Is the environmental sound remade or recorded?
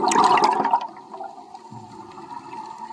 recorded